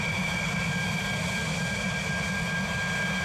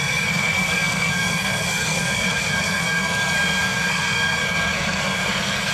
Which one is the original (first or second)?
first